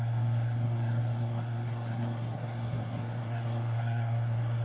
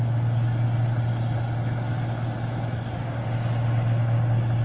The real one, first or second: second